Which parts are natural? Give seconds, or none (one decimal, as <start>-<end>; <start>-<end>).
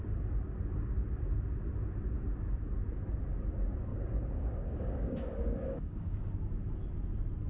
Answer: 0.0-3.9; 6.2-7.5